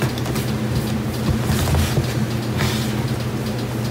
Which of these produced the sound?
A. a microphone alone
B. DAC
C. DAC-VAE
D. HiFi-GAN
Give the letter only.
A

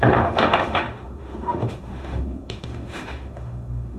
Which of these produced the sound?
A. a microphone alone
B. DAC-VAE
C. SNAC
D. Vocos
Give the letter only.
B